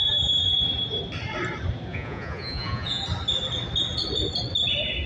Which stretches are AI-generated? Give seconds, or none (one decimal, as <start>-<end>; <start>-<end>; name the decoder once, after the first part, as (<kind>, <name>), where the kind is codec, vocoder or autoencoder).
1.9-3.0 (vocoder, Vocos)